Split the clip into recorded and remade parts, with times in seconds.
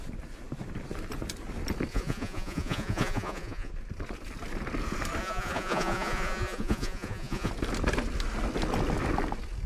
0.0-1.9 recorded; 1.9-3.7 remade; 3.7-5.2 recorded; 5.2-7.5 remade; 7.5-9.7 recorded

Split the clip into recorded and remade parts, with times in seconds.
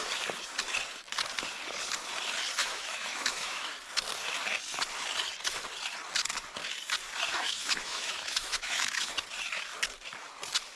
0.0-2.6 recorded; 2.6-3.7 remade; 3.7-7.3 recorded; 7.3-9.1 remade; 9.1-10.8 recorded